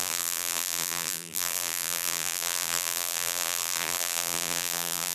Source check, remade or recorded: remade